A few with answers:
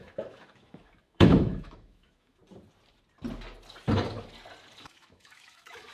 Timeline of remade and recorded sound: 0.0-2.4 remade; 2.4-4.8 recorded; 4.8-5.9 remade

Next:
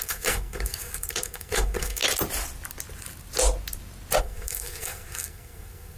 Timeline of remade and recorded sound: 0.0-2.0 remade; 2.0-4.2 recorded; 4.2-6.0 remade

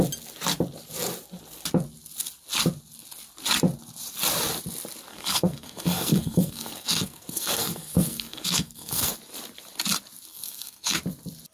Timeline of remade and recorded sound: 0.0-5.1 recorded; 5.1-9.1 remade; 9.1-10.3 recorded; 10.3-11.0 remade; 11.0-11.5 recorded